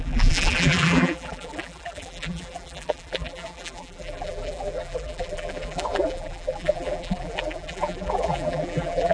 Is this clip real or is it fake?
fake